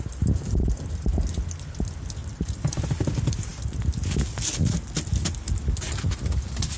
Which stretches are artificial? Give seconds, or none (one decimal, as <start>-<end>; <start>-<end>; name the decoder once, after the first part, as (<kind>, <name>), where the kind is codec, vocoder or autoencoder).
2.2-2.8 (vocoder, BigVGAN v2)